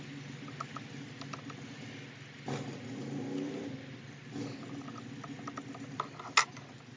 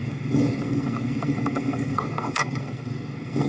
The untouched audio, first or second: first